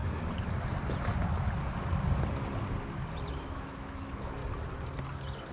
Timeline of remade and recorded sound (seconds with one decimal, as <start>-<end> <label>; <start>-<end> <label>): 0.0-3.3 recorded; 3.3-4.4 remade; 4.4-5.5 recorded